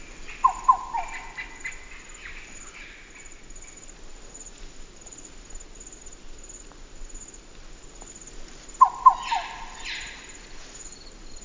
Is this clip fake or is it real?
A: real